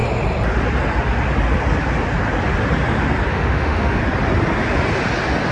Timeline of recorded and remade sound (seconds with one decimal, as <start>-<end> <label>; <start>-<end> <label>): 0.0-3.3 recorded; 3.3-4.0 remade; 4.0-5.5 recorded